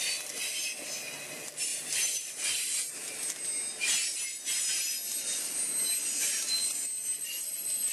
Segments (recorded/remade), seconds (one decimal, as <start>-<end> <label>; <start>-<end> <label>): 0.0-1.7 recorded; 1.7-2.9 remade; 2.9-7.9 recorded

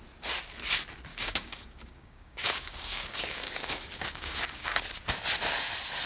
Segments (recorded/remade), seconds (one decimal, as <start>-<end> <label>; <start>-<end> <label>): 0.0-1.1 recorded; 1.1-4.8 remade; 4.8-6.1 recorded

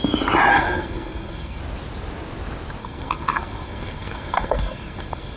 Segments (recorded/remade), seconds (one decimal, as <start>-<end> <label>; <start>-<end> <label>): 0.0-0.5 recorded; 0.5-1.6 remade; 1.6-2.8 recorded; 2.8-5.4 remade

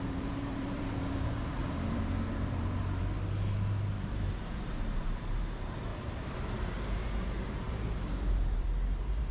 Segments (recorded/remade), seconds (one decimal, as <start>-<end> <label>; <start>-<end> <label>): 0.0-3.0 remade; 3.0-3.9 recorded; 3.9-5.9 remade; 5.9-6.5 recorded; 6.5-9.3 remade

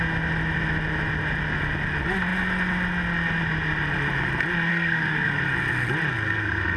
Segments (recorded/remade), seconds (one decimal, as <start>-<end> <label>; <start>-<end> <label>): 0.0-4.7 recorded; 4.7-5.4 remade; 5.4-6.1 recorded; 6.1-6.8 remade

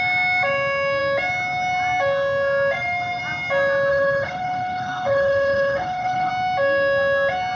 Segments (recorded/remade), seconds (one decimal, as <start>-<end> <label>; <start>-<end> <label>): 0.0-3.9 recorded; 3.9-6.3 remade; 6.3-7.5 recorded